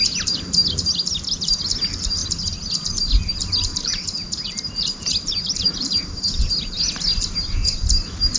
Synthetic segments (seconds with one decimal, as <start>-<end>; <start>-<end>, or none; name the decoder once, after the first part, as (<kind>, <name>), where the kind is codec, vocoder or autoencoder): 3.7-6.5 (vocoder, BigVGAN v2)